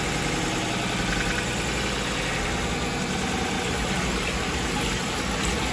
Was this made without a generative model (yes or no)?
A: yes